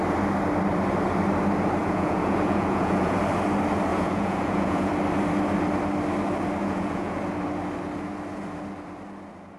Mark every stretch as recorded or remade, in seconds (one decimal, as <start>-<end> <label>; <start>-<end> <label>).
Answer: 0.0-1.8 recorded; 1.8-3.2 remade; 3.2-3.9 recorded; 3.9-4.9 remade; 4.9-6.6 recorded; 6.6-7.2 remade; 7.2-9.6 recorded